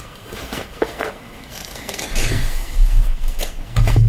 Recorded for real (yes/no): no